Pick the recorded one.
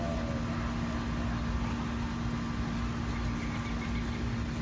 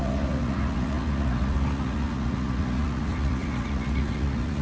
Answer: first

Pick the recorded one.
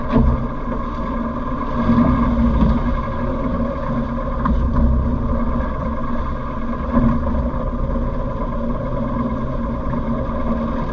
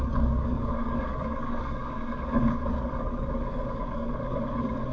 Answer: first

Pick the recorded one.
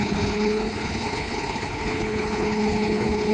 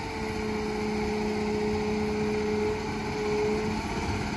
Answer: second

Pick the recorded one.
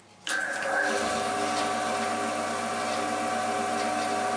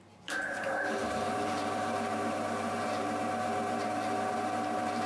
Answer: first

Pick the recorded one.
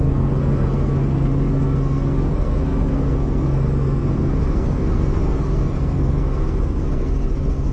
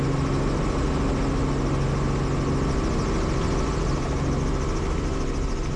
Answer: second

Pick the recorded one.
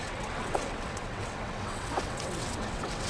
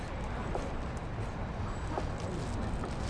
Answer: second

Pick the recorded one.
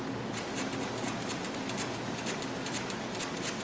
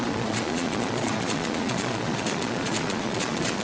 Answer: first